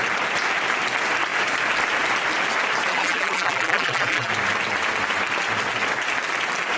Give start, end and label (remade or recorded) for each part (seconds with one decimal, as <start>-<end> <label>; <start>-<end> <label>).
0.0-2.9 recorded; 2.9-4.3 remade; 4.3-6.8 recorded

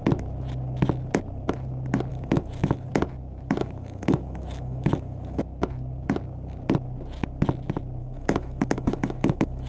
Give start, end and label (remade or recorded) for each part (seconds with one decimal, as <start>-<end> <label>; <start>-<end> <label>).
0.0-2.1 recorded; 2.1-2.9 remade; 2.9-3.6 recorded; 3.6-5.4 remade; 5.4-8.0 recorded; 8.0-9.7 remade

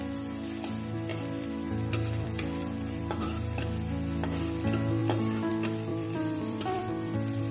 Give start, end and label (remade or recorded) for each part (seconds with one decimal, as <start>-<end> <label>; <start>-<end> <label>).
0.0-1.1 recorded; 1.1-3.6 remade; 3.6-5.9 recorded; 5.9-6.8 remade; 6.8-7.5 recorded

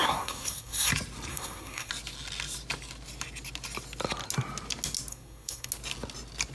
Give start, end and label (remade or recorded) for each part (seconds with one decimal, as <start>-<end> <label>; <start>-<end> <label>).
0.0-0.9 remade; 0.9-1.3 recorded; 1.3-1.9 remade; 1.9-5.1 recorded; 5.1-5.7 remade; 5.7-6.5 recorded

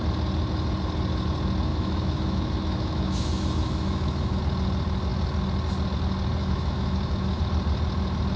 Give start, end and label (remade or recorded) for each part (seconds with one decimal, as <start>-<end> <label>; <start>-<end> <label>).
0.0-1.7 recorded; 1.7-4.4 remade; 4.4-6.4 recorded; 6.4-7.4 remade; 7.4-8.4 recorded

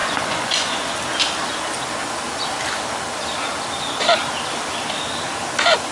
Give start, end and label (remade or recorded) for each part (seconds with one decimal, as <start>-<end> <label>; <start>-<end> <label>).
0.0-0.9 remade; 0.9-5.9 recorded

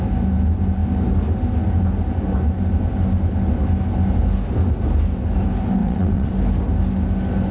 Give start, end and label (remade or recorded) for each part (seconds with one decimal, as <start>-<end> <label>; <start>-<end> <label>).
0.0-5.8 recorded; 5.8-6.3 remade; 6.3-7.5 recorded